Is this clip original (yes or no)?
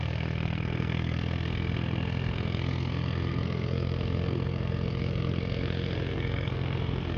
no